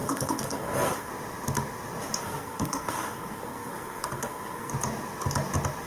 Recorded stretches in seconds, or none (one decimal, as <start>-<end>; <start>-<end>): 1.1-2.2; 4.7-5.9